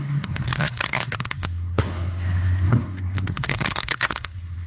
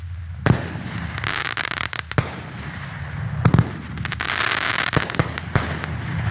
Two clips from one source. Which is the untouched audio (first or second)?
second